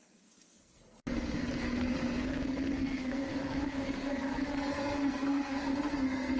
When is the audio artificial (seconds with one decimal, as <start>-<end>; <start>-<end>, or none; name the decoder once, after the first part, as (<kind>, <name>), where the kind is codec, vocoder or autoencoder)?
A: 0.0-6.4 (codec, SNAC)